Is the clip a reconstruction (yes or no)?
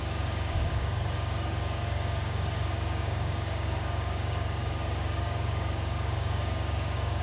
yes